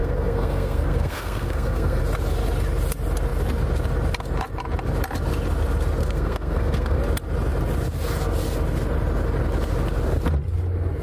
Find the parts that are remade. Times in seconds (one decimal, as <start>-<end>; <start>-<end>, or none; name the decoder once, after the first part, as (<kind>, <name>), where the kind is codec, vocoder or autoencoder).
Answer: 0.0-2.0 (codec, SNAC); 6.0-7.0